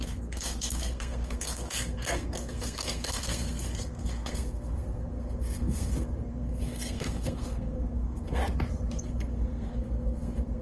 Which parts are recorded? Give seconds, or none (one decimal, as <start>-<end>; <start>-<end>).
8.4-9.1